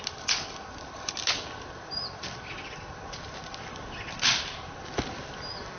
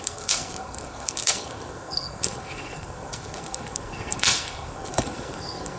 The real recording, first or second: first